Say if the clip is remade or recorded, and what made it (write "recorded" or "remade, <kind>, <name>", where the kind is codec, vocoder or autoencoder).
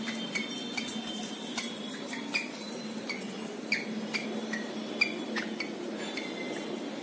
recorded